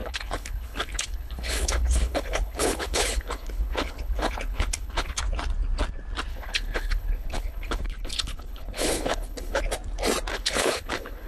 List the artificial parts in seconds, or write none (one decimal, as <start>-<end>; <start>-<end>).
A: 0.0-5.2; 6.3-9.6; 10.3-11.3